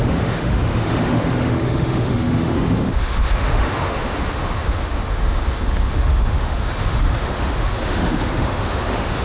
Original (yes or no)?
no